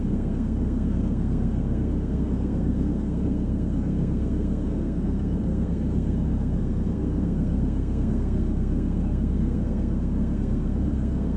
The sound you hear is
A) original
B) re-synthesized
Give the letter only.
B